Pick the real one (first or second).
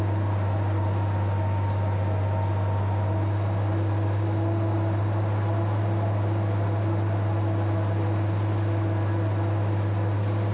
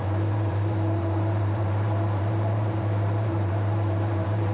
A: first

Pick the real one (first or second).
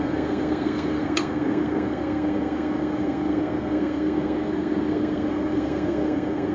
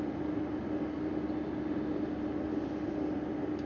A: second